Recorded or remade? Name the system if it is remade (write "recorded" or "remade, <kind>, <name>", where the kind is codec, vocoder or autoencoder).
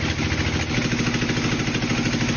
recorded